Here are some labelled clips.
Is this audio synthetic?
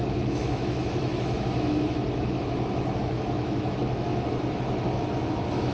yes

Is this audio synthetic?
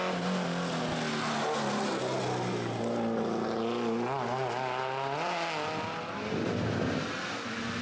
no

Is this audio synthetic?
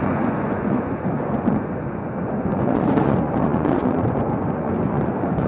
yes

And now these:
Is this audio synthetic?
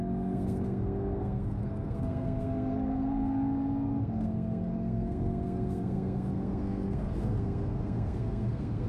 yes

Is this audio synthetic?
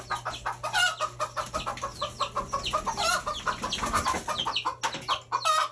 no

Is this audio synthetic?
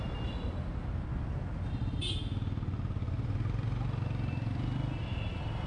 no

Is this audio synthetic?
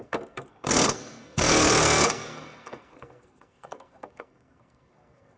yes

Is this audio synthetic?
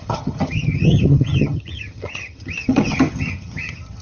yes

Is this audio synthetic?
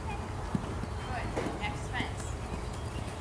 no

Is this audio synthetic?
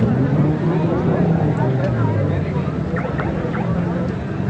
no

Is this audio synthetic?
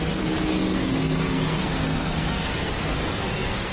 yes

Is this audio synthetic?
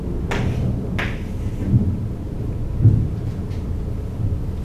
no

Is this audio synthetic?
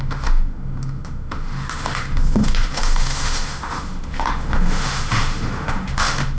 yes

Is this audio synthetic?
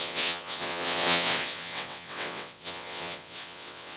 yes